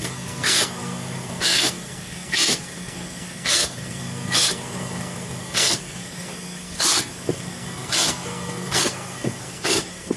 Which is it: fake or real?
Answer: fake